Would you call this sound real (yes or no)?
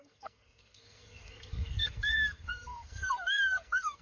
no